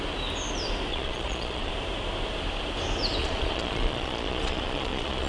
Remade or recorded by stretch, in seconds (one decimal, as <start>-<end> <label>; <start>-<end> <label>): 0.0-0.9 recorded; 0.9-1.7 remade; 1.7-3.2 recorded; 3.2-5.3 remade